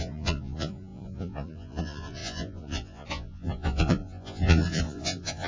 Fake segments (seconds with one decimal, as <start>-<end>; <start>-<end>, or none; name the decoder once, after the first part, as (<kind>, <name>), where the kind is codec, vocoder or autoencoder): 0.0-5.5 (vocoder, Vocos)